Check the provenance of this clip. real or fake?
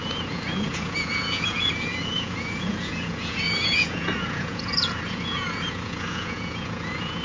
fake